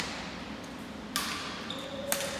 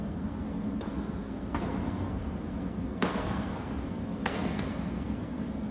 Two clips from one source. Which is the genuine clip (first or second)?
first